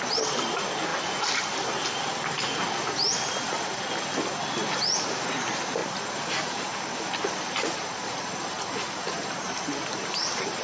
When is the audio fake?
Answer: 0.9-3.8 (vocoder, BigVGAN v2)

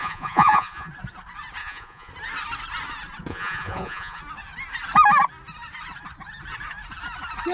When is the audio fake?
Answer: 0.0-0.9 (vocoder, Vocos); 1.6-2.1; 3.3-4.2

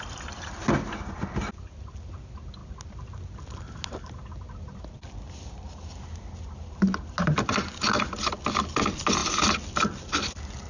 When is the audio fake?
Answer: none

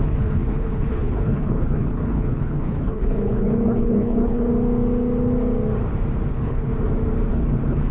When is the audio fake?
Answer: 0.0-4.5 (codec, HILCodec); 6.3-6.7; 7.3-7.9

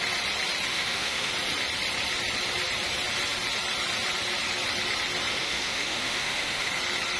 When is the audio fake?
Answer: 0.7-1.3 (autoencoder, DAC-VAE); 5.3-6.7

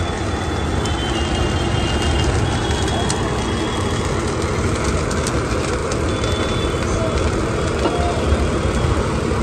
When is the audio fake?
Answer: none

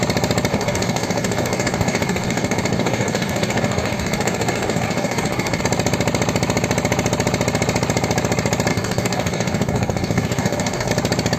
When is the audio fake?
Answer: 0.5-5.6 (codec, DAC); 8.7-10.9

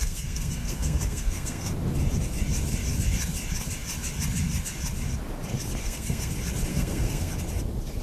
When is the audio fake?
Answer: 0.0-1.7 (codec, SNAC); 5.8-6.3; 6.7-7.3